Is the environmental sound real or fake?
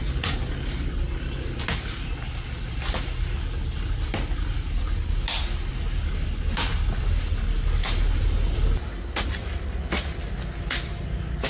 real